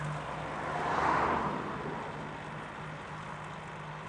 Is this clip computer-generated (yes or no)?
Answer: no